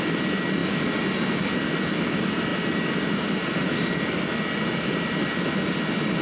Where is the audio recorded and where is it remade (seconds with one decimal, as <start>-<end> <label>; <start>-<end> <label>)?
0.0-6.2 recorded